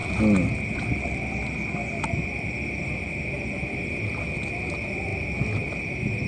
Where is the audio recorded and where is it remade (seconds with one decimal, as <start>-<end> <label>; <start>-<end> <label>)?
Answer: 0.0-6.3 recorded